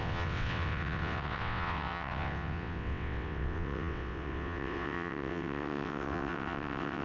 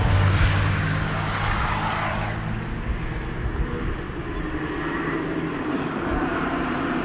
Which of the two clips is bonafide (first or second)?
second